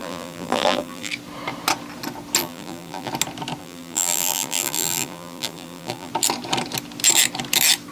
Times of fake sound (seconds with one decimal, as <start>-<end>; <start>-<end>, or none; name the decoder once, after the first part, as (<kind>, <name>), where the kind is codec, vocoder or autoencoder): 0.0-1.1 (vocoder, BigVGAN v2); 2.4-3.1; 3.6-6.1